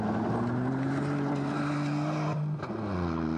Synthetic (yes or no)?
no